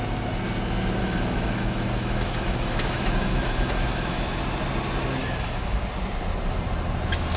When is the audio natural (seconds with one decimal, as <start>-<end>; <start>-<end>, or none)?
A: 0.0-1.0; 4.4-5.2; 5.8-7.4